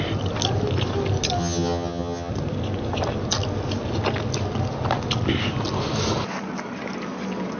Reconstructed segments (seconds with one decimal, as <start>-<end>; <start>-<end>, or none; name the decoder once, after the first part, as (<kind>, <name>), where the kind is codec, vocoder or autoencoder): 1.4-2.3 (vocoder, HiFi-GAN)